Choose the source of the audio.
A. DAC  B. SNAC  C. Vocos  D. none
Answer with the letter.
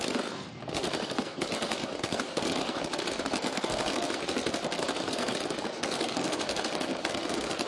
B